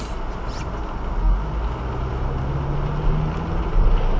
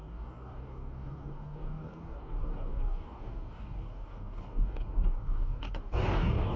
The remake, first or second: second